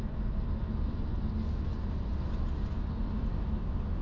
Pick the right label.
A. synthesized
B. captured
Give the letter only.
B